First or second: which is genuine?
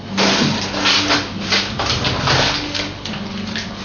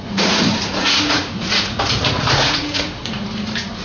first